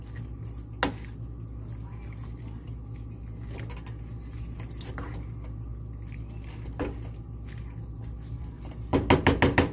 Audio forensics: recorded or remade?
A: recorded